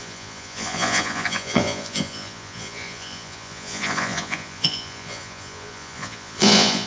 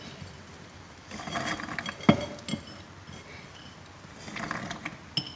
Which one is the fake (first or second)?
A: first